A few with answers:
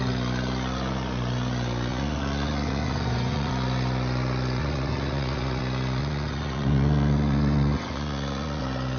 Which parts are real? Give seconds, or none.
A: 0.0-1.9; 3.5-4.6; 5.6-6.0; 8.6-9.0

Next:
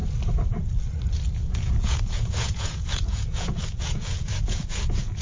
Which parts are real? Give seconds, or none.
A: 0.0-1.3

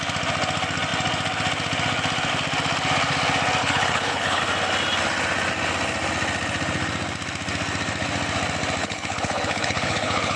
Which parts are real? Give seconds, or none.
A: 0.0-3.6; 4.4-8.8